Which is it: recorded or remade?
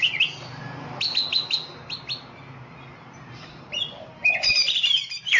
recorded